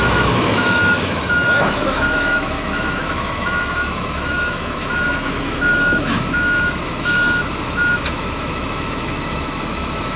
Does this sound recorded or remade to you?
remade